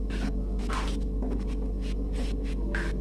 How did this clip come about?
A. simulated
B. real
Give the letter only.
B